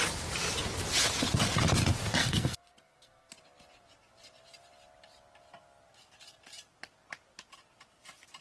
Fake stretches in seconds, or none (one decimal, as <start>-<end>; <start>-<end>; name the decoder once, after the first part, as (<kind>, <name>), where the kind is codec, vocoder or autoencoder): 2.2-3.3 (codec, SNAC)